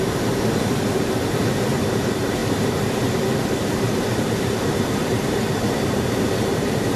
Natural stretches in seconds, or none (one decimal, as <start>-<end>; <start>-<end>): none